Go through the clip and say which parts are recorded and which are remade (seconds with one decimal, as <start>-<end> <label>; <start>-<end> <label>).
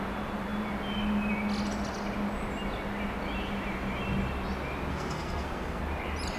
0.0-4.9 recorded; 4.9-5.8 remade; 5.8-6.4 recorded